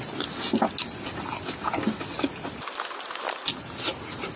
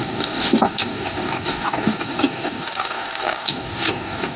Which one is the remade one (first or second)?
second